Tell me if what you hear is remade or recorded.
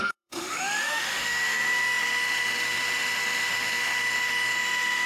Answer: remade